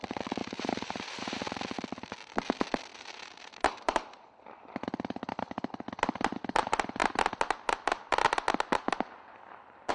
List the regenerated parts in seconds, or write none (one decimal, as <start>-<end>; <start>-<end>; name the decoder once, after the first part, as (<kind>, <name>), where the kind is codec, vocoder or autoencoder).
0.4-1.4 (vocoder, BigVGAN v2); 2.9-4.7